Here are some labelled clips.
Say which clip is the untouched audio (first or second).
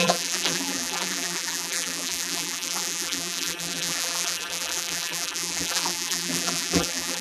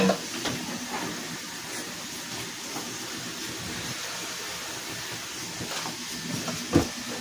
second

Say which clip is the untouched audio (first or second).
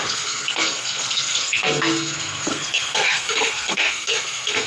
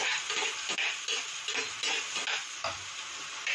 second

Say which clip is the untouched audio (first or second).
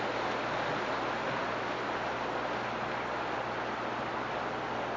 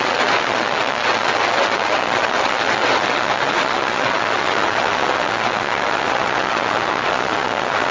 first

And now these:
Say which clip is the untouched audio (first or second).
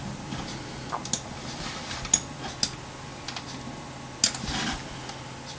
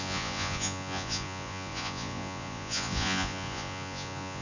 first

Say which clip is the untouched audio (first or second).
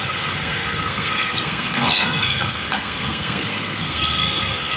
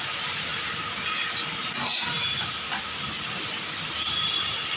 second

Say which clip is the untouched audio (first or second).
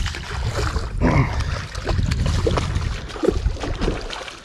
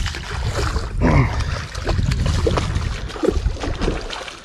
second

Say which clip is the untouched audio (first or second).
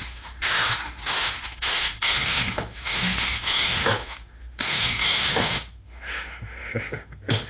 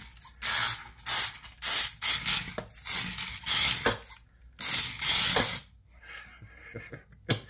second